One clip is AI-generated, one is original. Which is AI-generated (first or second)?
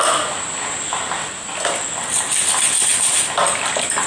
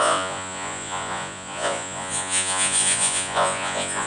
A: second